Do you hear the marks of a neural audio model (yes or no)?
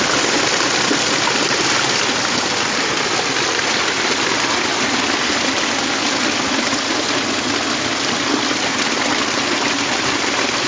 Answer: no